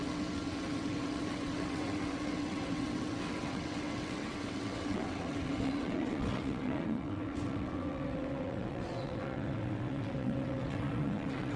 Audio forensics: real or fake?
fake